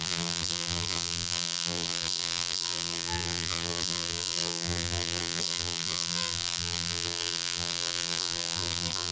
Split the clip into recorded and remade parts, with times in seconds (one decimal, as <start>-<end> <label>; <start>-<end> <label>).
0.0-9.1 remade